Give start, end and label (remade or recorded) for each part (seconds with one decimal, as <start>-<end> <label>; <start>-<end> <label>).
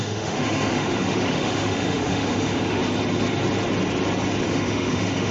0.0-2.8 remade; 2.8-4.4 recorded; 4.4-5.3 remade